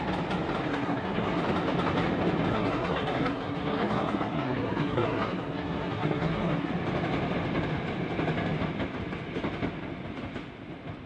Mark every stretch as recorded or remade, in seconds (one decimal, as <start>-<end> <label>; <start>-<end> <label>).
0.0-0.7 recorded; 0.7-1.4 remade; 1.4-2.5 recorded; 2.5-6.7 remade; 6.7-11.1 recorded

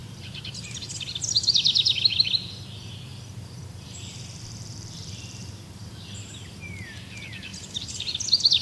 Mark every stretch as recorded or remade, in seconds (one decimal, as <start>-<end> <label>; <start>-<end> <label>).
0.0-0.9 remade; 0.9-3.1 recorded; 3.1-6.1 remade; 6.1-7.5 recorded; 7.5-8.2 remade; 8.2-8.6 recorded

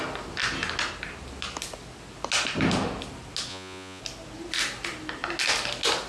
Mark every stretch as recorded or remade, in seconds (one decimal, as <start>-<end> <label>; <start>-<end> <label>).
0.0-3.5 recorded; 3.5-4.0 remade; 4.0-6.1 recorded

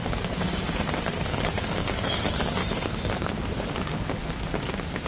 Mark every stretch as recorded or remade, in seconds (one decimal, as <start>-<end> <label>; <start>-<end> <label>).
0.0-1.0 recorded; 1.0-2.6 remade; 2.6-3.2 recorded; 3.2-4.2 remade; 4.2-5.1 recorded

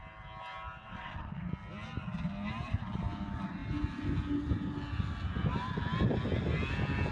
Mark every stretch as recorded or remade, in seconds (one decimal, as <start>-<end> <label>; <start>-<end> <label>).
0.0-0.8 recorded; 0.8-1.4 remade; 1.4-7.1 recorded

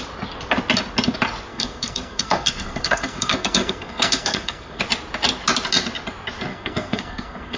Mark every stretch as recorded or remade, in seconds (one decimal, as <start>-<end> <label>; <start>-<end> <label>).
0.0-1.5 recorded; 1.5-4.8 remade; 4.8-6.5 recorded; 6.5-7.6 remade

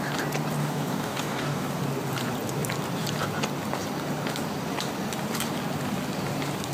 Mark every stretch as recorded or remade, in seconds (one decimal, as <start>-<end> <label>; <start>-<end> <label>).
0.0-0.6 recorded; 0.6-1.7 remade; 1.7-6.7 recorded

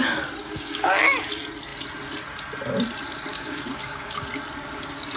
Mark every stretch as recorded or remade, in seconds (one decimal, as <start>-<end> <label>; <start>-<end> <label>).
0.0-0.4 recorded; 0.4-1.0 remade; 1.0-3.3 recorded; 3.3-4.3 remade; 4.3-5.2 recorded